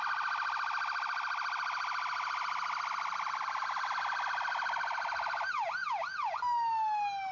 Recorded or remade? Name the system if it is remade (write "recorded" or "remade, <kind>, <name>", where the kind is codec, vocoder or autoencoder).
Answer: recorded